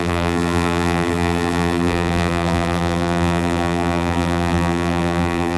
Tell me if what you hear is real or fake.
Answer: fake